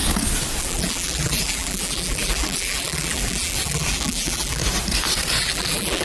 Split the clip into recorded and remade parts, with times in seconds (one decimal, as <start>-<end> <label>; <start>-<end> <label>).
0.0-0.6 recorded; 0.6-4.6 remade; 4.6-5.4 recorded; 5.4-6.0 remade